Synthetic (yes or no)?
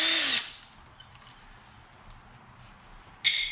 no